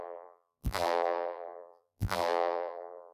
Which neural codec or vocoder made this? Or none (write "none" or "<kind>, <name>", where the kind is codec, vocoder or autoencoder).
vocoder, BigVGAN v2